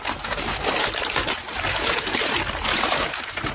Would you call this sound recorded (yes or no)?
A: no